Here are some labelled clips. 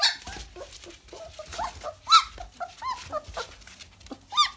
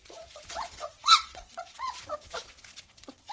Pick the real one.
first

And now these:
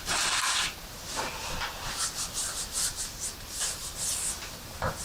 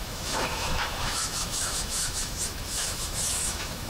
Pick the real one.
first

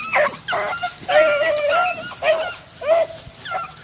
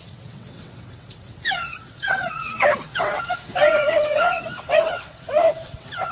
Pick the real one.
first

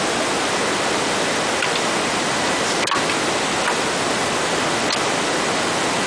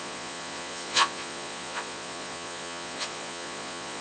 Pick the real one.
first